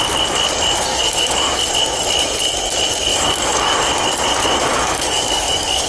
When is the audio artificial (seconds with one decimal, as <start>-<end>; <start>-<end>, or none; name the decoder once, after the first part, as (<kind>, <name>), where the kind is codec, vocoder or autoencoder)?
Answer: 0.9-1.6 (codec, DAC); 3.1-3.8; 4.7-5.9